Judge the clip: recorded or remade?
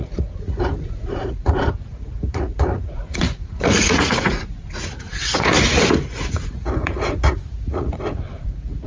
remade